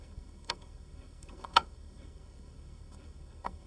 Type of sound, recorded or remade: remade